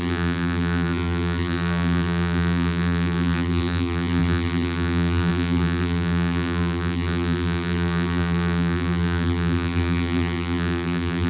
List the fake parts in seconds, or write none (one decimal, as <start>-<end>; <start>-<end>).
0.0-11.3